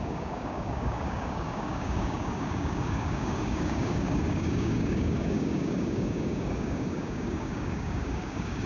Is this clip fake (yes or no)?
yes